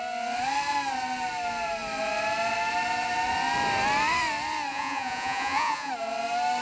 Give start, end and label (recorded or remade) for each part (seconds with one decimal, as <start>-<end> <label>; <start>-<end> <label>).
0.0-4.7 recorded; 4.7-5.9 remade; 5.9-6.6 recorded